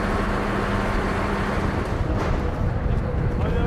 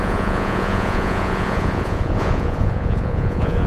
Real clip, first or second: first